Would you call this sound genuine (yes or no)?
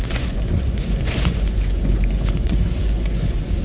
no